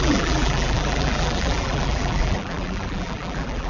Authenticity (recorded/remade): remade